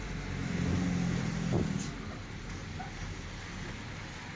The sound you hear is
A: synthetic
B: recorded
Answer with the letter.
B